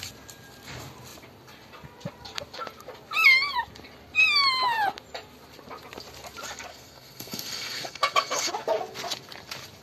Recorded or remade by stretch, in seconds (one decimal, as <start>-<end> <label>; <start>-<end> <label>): 0.0-6.7 recorded; 6.7-8.5 remade; 8.5-9.8 recorded